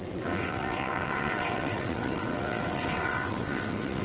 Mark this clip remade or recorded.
remade